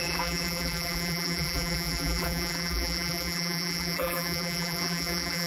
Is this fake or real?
fake